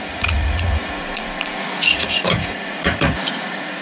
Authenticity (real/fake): fake